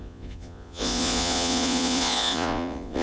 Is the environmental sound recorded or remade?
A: remade